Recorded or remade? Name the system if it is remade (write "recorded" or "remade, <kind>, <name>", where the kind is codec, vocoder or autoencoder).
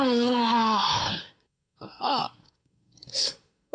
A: remade, codec, SNAC